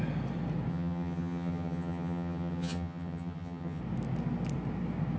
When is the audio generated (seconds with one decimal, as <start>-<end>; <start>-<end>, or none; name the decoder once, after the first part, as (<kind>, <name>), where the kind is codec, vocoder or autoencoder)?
0.7-3.8 (vocoder, HiFi-GAN)